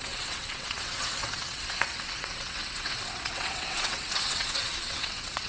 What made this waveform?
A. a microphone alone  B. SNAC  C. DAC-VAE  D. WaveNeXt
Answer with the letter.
D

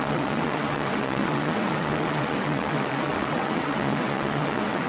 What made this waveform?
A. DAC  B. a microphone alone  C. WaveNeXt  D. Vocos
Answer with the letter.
C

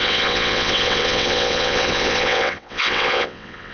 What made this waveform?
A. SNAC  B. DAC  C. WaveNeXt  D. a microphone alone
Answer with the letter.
C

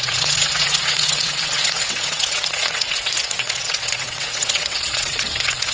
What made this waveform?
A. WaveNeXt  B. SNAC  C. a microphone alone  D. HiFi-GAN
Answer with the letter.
A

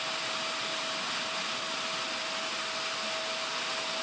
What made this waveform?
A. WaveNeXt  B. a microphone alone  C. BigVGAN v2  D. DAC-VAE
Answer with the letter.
B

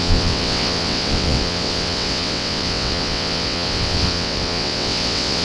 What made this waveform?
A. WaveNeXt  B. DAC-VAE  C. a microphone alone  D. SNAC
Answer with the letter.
A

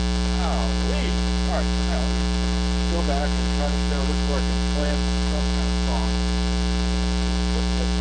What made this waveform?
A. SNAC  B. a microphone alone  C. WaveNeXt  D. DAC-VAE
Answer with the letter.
B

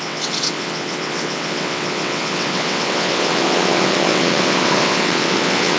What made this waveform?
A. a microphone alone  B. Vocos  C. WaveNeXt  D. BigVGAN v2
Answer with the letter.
C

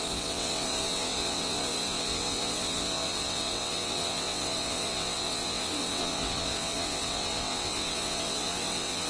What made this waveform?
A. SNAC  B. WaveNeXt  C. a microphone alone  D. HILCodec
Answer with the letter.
B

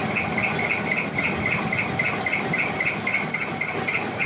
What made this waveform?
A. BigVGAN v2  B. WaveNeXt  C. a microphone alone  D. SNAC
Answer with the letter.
C